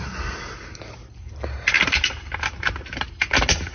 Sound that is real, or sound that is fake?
real